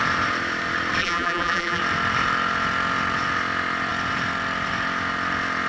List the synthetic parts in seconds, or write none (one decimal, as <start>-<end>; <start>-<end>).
1.0-1.8

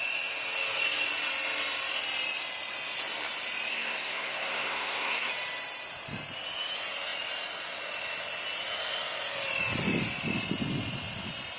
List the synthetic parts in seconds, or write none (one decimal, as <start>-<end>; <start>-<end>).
3.7-5.3